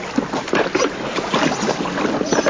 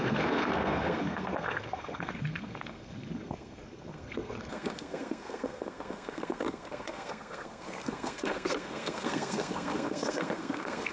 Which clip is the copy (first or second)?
second